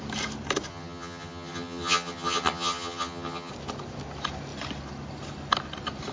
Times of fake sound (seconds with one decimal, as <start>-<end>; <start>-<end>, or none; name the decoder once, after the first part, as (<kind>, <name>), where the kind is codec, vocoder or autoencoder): 0.7-3.5 (vocoder, HiFi-GAN)